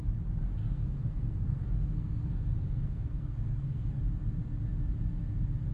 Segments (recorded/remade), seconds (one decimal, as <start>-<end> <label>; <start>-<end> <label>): 0.0-0.6 recorded; 0.6-4.0 remade; 4.0-5.7 recorded